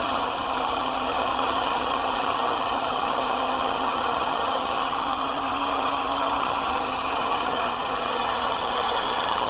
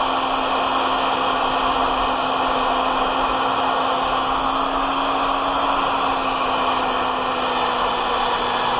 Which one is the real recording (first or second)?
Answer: second